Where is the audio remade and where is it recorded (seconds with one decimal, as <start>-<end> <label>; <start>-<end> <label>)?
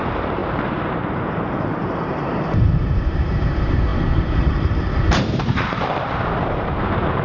0.0-7.2 remade